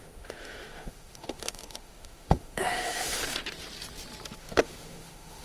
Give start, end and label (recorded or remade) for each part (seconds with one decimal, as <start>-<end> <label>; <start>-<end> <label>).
0.0-3.2 remade; 3.2-4.4 recorded; 4.4-5.4 remade